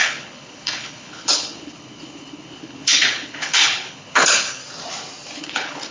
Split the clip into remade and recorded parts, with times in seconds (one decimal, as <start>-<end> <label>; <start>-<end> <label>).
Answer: 0.0-4.6 remade; 4.6-5.4 recorded; 5.4-5.9 remade